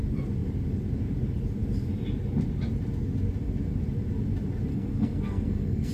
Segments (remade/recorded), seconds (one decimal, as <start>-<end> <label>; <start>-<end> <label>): 0.0-4.7 recorded; 4.7-5.9 remade